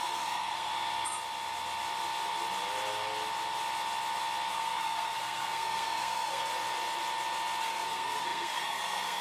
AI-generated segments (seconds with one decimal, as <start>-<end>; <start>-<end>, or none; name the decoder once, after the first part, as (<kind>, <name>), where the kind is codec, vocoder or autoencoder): 0.0-0.7 (codec, SNAC); 4.5-6.5; 7.6-9.2